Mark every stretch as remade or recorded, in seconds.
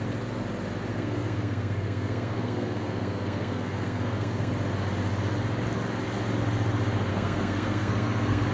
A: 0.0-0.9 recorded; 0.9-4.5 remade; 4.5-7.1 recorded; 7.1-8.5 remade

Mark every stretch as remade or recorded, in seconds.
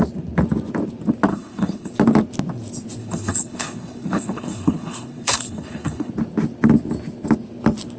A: 0.0-1.3 recorded; 1.3-1.9 remade; 1.9-3.0 recorded; 3.0-6.1 remade; 6.1-8.0 recorded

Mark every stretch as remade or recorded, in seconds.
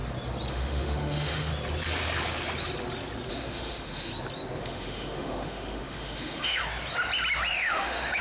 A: 0.0-0.5 recorded; 0.5-1.5 remade; 1.5-3.3 recorded; 3.3-4.1 remade; 4.1-4.6 recorded; 4.6-6.6 remade; 6.6-7.5 recorded; 7.5-8.2 remade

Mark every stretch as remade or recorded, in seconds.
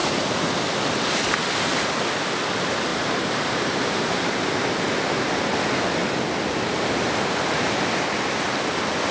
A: 0.0-2.9 recorded; 2.9-4.7 remade; 4.7-9.1 recorded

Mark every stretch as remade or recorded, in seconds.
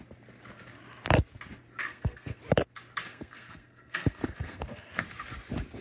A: 0.0-1.8 recorded; 1.8-2.4 remade; 2.4-3.1 recorded; 3.1-5.0 remade; 5.0-5.8 recorded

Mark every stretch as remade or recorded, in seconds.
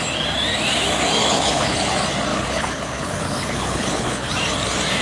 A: 0.0-1.2 recorded; 1.2-1.9 remade; 1.9-2.3 recorded; 2.3-4.3 remade; 4.3-5.0 recorded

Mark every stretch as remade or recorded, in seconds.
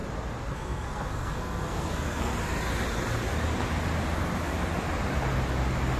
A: 0.0-0.5 recorded; 0.5-2.3 remade; 2.3-6.0 recorded